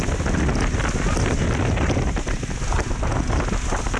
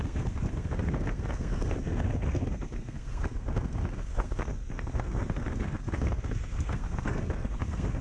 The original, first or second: first